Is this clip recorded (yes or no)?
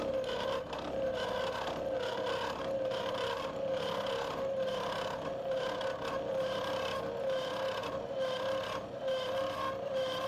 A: yes